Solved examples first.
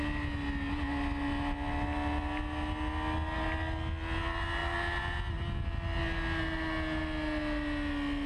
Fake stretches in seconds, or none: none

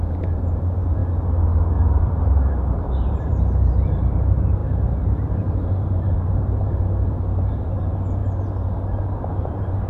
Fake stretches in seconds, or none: 0.0-1.0 (vocoder, BigVGAN v2); 2.0-8.2; 9.4-9.9

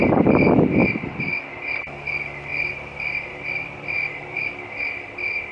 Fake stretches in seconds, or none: 2.5-4.5 (vocoder, BigVGAN v2)

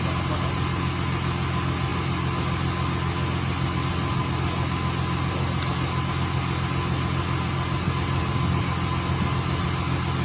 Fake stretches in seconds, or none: none

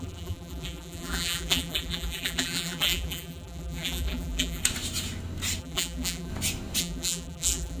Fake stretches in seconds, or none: 0.0-4.6 (vocoder, BigVGAN v2); 5.6-6.3; 6.8-7.8

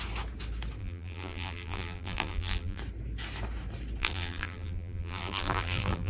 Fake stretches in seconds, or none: 0.8-2.8 (vocoder, BigVGAN v2); 4.0-6.1